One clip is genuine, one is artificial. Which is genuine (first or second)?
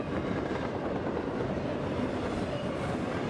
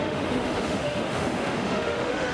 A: first